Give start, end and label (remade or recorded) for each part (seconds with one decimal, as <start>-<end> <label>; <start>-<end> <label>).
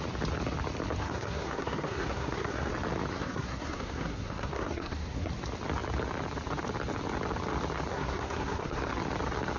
0.0-1.0 recorded; 1.0-2.7 remade; 2.7-3.1 recorded; 3.1-5.3 remade; 5.3-7.9 recorded; 7.9-8.8 remade; 8.8-9.6 recorded